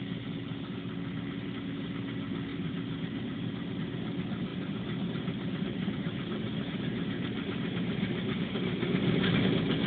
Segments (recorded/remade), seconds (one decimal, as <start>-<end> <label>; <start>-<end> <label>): 0.0-2.5 recorded; 2.5-3.7 remade; 3.7-4.5 recorded; 4.5-9.4 remade; 9.4-9.9 recorded

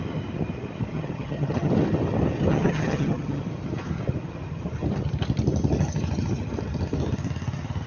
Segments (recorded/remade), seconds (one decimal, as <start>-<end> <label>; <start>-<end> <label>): 0.0-0.9 recorded; 0.9-1.7 remade; 1.7-2.5 recorded; 2.5-3.4 remade; 3.4-7.9 recorded

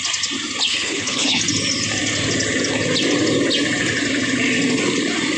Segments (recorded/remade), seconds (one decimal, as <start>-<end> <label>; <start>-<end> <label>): 0.0-0.7 recorded; 0.7-1.4 remade; 1.4-5.4 recorded

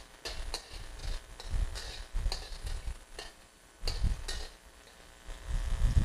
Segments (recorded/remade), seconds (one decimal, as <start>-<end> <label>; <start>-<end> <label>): 0.0-6.0 recorded

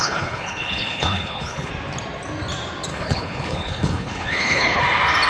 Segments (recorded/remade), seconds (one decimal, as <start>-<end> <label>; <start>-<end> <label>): 0.0-1.7 remade; 1.7-2.9 recorded; 2.9-4.8 remade; 4.8-5.3 recorded